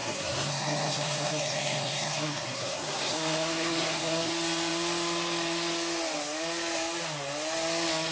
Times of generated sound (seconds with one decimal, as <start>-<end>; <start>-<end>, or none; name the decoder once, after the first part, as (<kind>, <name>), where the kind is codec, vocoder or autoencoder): 0.0-4.3 (codec, SNAC)